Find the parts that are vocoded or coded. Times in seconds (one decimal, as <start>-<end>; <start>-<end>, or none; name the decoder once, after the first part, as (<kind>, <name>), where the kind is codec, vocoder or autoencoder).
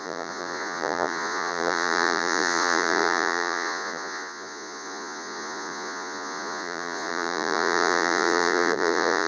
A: 0.0-9.3 (vocoder, Vocos)